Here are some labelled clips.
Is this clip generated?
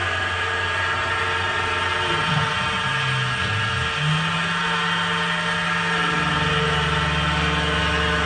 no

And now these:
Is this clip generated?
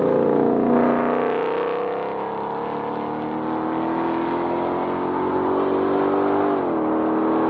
no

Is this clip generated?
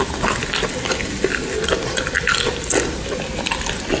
no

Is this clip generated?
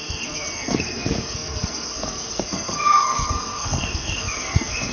yes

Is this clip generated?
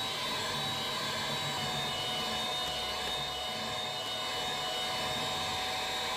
no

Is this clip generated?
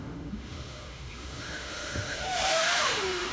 yes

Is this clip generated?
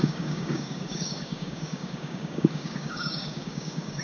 yes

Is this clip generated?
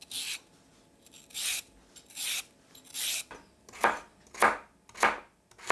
no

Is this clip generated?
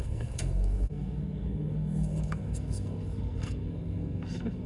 yes